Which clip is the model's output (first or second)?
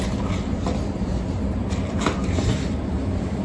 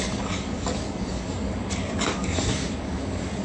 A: second